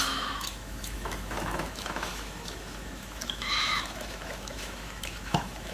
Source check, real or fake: fake